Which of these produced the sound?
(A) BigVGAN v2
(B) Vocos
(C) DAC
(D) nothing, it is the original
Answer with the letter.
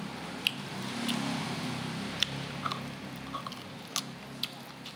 D